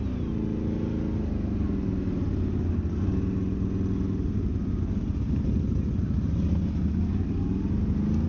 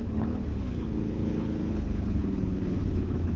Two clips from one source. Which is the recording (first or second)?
first